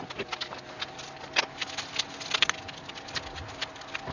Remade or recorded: recorded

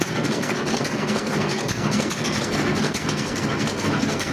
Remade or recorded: remade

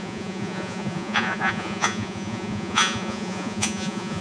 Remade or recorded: remade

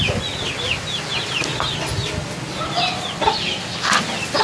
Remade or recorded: recorded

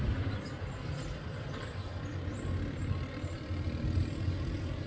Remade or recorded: recorded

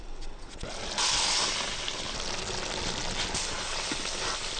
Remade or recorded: recorded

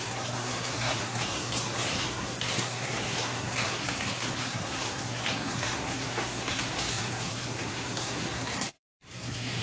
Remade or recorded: remade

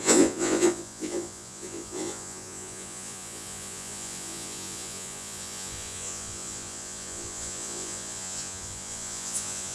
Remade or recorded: remade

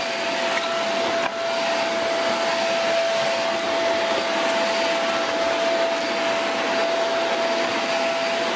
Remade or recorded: recorded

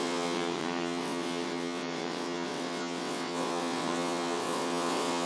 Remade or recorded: remade